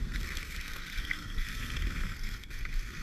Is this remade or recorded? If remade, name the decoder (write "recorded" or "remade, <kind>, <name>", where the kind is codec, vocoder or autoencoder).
remade, codec, SNAC